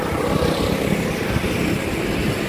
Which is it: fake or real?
real